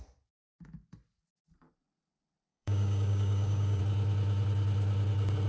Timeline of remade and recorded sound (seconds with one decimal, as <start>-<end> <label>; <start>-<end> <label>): 0.0-2.5 recorded; 2.5-3.8 remade; 3.8-5.5 recorded